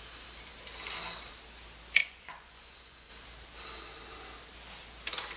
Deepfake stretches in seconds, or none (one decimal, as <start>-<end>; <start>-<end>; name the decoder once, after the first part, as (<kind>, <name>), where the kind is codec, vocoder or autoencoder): 2.0-3.1 (vocoder, Vocos)